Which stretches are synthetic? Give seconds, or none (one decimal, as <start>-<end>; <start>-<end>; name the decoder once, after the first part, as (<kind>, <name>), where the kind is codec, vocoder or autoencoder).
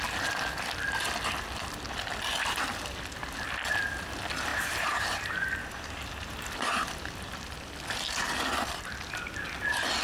4.5-6.9 (vocoder, BigVGAN v2)